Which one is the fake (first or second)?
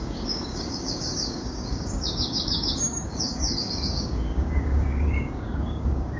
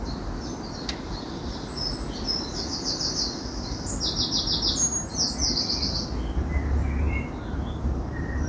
first